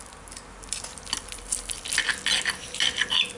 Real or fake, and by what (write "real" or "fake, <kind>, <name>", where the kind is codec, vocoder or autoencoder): real